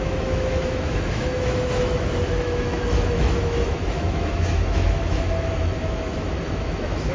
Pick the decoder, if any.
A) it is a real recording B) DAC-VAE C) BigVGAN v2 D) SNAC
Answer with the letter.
B